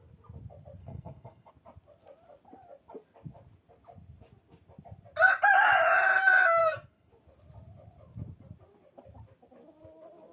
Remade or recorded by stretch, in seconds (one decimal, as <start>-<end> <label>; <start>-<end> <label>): 0.0-0.8 recorded; 0.8-1.5 remade; 1.5-6.6 recorded; 6.6-7.1 remade; 7.1-10.3 recorded